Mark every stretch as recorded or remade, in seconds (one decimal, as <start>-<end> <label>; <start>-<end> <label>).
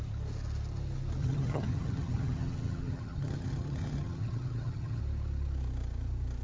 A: 0.0-1.2 recorded; 1.2-5.0 remade; 5.0-6.4 recorded